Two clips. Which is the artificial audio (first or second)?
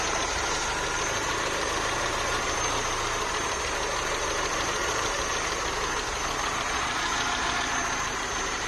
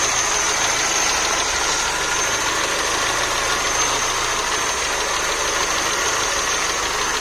first